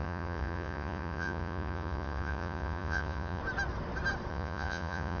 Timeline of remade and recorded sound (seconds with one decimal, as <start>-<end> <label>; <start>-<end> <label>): 0.0-3.4 remade; 3.4-4.3 recorded; 4.3-5.2 remade